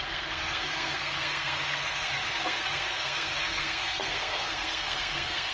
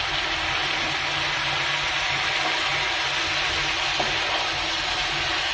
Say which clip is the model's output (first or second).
first